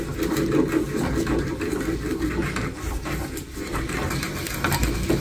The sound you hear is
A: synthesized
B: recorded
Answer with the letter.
B